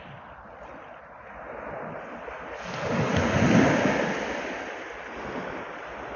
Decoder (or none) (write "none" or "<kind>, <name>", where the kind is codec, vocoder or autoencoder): none